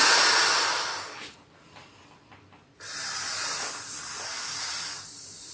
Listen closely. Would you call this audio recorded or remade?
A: recorded